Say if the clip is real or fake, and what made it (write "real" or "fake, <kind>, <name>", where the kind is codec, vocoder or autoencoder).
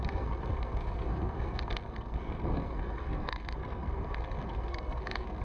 fake, codec, SNAC